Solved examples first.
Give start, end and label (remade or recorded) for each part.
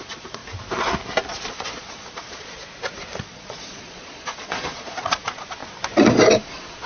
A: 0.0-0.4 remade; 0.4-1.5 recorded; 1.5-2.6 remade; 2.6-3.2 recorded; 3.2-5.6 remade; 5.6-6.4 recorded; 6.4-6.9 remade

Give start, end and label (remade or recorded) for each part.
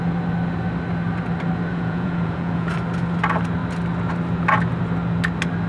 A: 0.0-1.7 recorded; 1.7-2.7 remade; 2.7-5.7 recorded